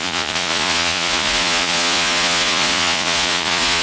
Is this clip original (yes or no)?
no